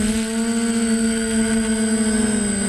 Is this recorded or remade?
recorded